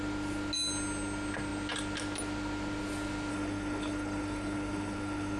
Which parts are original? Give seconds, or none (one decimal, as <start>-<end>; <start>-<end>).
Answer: 0.0-3.3